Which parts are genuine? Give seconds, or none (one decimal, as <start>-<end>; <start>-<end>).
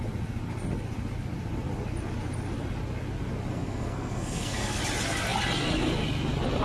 0.0-3.5; 4.8-6.6